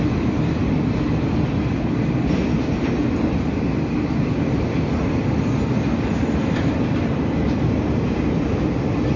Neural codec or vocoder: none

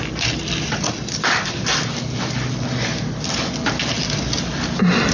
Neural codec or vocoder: none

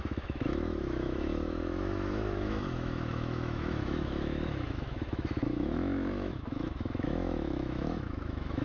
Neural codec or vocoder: autoencoder, DAC-VAE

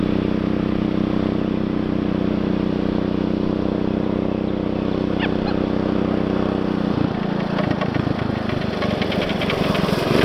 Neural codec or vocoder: none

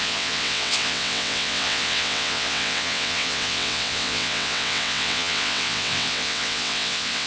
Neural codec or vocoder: vocoder, WaveNeXt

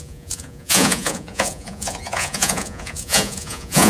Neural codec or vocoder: vocoder, Vocos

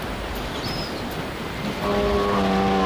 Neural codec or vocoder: none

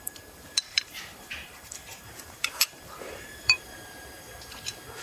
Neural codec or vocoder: vocoder, BigVGAN v2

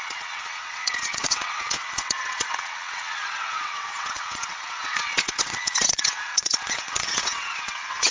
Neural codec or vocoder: vocoder, WaveNeXt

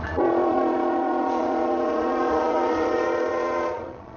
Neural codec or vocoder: vocoder, Vocos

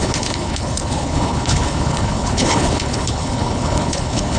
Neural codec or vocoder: codec, HILCodec